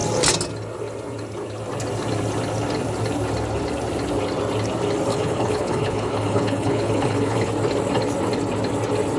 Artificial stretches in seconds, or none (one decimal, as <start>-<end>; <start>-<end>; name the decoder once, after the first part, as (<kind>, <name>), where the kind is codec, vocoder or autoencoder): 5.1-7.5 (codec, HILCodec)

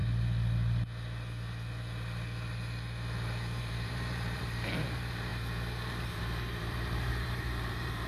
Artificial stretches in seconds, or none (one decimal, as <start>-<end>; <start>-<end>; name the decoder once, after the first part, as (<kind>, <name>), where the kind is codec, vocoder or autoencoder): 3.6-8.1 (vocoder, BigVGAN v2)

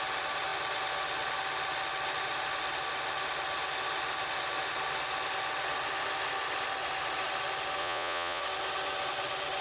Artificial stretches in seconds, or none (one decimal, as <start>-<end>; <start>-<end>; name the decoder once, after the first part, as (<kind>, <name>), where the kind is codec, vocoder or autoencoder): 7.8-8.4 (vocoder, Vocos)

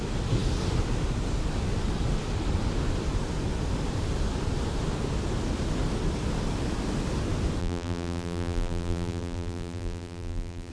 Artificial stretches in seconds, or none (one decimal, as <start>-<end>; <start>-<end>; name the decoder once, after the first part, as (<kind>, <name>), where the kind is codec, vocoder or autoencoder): 7.6-10.7 (vocoder, BigVGAN v2)

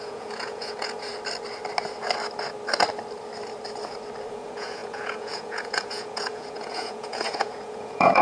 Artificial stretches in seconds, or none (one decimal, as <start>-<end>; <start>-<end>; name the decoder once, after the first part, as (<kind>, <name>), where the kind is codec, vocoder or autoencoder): 0.0-1.1 (vocoder, Vocos); 4.3-8.2

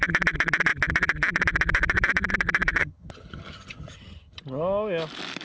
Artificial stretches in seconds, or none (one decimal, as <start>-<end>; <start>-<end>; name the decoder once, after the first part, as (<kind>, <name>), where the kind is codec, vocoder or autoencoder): 2.8-4.4 (vocoder, HiFi-GAN)